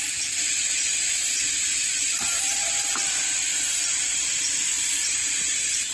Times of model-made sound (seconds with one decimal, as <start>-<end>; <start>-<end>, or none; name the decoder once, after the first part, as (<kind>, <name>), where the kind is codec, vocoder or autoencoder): 2.0-3.5 (vocoder, BigVGAN v2); 4.1-5.9